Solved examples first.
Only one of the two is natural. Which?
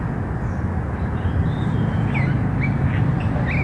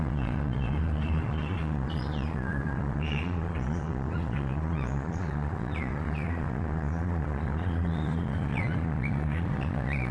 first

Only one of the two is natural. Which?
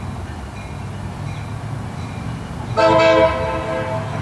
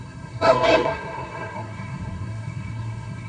first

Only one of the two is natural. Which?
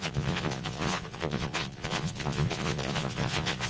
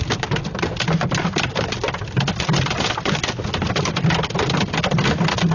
second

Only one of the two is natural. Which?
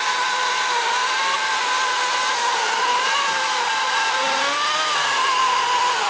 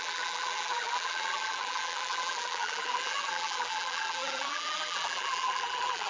first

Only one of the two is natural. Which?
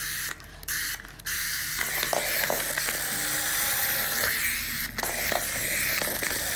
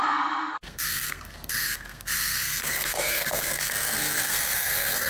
first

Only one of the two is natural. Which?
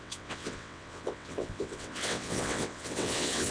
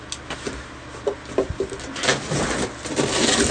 second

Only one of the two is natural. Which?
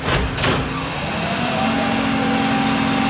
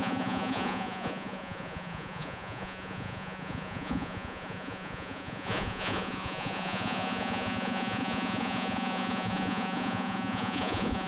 first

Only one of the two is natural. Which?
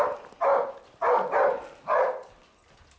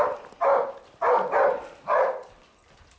first